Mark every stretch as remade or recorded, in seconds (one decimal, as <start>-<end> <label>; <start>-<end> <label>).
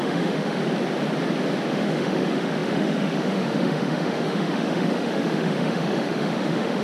0.0-0.6 remade; 0.6-1.7 recorded; 1.7-6.8 remade